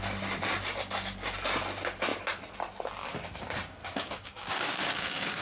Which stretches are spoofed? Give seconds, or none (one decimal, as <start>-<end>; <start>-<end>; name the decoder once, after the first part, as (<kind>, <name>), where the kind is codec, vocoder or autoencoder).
3.8-5.4 (codec, DAC)